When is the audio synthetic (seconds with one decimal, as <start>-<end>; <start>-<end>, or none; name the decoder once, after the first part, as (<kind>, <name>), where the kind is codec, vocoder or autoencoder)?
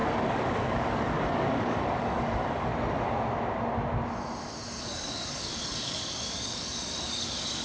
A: 0.0-2.7 (codec, DAC); 4.8-7.6